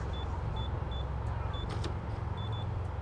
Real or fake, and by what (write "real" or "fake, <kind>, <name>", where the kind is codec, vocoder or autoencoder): real